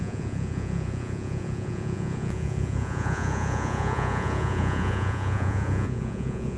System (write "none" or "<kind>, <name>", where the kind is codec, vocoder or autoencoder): vocoder, Vocos